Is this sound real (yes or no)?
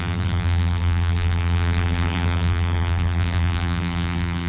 no